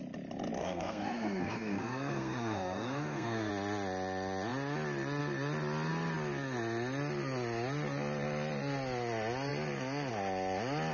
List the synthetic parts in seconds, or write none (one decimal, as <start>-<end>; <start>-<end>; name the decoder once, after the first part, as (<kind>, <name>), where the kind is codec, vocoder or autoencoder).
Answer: 0.6-3.5 (codec, SNAC)

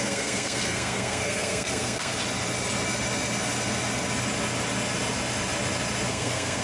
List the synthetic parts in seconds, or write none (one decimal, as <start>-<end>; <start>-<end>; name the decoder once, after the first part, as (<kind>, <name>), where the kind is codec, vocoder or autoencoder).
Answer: 0.0-2.1 (codec, SNAC); 6.1-6.6

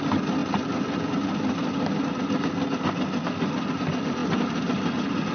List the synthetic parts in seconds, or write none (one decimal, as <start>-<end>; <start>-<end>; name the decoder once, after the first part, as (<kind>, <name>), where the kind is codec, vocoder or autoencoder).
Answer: none

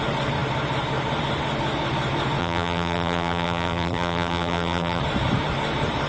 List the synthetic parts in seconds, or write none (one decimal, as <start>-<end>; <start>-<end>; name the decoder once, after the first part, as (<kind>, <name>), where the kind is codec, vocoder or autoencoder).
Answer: 2.4-5.0 (vocoder, BigVGAN v2)

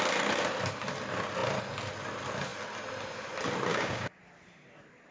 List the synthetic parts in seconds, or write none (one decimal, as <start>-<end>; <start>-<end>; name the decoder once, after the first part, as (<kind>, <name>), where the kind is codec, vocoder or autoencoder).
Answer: 3.7-4.2 (codec, DAC)